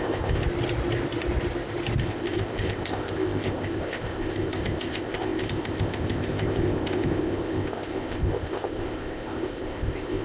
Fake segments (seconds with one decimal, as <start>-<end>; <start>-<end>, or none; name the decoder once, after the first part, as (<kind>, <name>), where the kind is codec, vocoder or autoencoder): 0.0-0.4 (codec, ZipCodec); 2.0-10.2